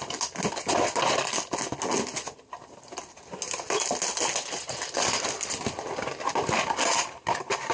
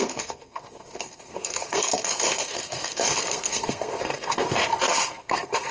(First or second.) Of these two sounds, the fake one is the second